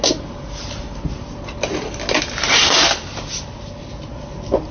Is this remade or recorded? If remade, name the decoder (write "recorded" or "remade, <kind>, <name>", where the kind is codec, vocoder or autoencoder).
recorded